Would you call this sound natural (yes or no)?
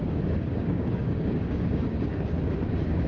no